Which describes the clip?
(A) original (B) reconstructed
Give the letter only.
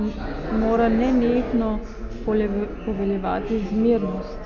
A